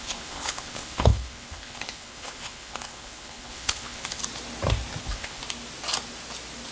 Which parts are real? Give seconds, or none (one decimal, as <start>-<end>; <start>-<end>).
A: 4.2-5.0; 5.4-6.7